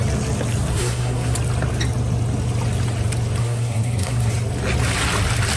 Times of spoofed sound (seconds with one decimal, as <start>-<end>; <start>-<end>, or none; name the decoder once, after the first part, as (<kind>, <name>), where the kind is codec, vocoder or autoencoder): 0.7-1.3 (codec, SNAC); 3.4-4.3